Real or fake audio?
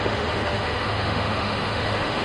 fake